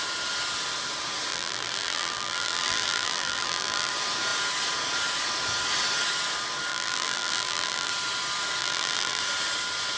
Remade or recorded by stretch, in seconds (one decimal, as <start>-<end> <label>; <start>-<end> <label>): 0.0-1.3 recorded; 1.3-3.9 remade; 3.9-6.7 recorded; 6.7-7.9 remade; 7.9-8.6 recorded; 8.6-9.2 remade; 9.2-10.0 recorded